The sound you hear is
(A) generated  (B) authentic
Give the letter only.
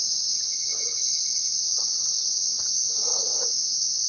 A